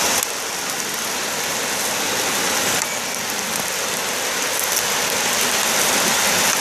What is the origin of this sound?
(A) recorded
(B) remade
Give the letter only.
A